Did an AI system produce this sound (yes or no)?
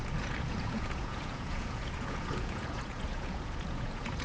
yes